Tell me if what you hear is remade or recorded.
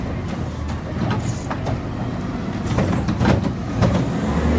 recorded